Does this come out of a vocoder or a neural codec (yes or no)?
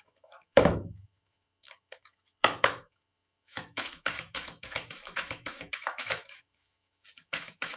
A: yes